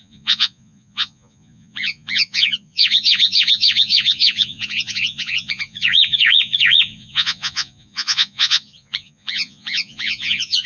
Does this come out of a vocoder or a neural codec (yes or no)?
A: yes